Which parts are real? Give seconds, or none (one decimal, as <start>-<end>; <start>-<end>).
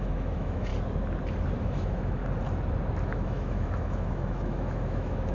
0.7-1.6; 2.2-3.0